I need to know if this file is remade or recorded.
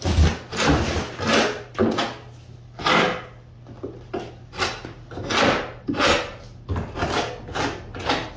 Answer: recorded